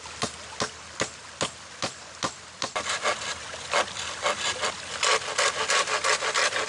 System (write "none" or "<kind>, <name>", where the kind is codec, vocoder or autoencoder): none